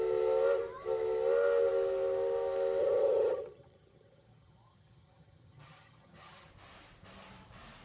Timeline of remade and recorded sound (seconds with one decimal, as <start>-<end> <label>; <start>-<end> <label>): 0.0-2.8 recorded; 2.8-6.5 remade; 6.5-7.8 recorded